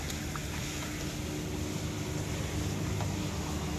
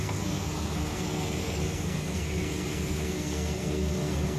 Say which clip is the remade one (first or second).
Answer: second